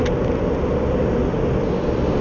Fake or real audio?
real